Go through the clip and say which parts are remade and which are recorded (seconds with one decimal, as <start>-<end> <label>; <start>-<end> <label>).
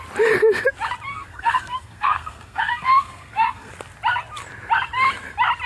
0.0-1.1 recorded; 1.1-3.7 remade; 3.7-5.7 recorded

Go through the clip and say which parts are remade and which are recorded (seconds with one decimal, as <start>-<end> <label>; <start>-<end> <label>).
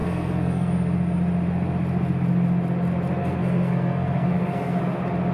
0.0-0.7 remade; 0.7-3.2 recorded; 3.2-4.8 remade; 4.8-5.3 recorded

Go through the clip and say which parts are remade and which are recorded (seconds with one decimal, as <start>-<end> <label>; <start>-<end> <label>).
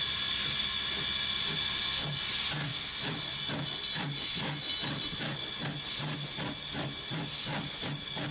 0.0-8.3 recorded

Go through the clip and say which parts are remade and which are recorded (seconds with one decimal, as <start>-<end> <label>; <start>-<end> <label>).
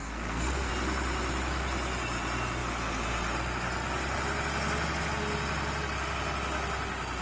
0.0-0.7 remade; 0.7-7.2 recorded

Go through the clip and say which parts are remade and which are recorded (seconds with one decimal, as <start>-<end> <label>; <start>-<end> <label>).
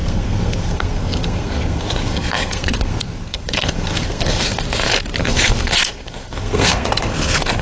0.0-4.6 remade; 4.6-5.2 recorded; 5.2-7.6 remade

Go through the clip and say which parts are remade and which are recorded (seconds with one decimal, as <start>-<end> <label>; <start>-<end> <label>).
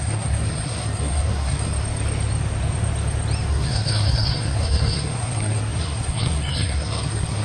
0.0-1.7 remade; 1.7-3.5 recorded; 3.5-7.4 remade